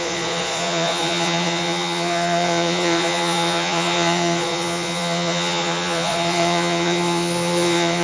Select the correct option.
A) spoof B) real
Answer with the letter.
A